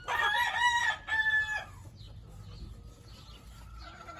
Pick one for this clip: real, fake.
real